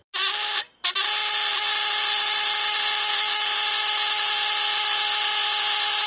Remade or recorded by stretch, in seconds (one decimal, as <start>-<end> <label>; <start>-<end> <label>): 0.0-6.1 recorded